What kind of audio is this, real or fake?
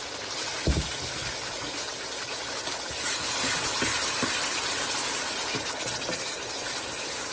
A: real